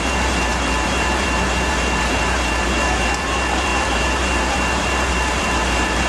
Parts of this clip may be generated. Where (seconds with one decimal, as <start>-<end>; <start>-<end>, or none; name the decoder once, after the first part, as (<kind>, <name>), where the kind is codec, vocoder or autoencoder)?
0.0-6.1 (vocoder, BigVGAN v2)